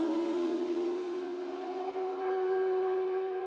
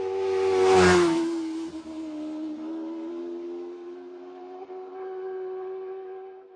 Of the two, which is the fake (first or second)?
first